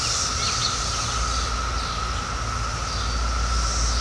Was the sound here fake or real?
real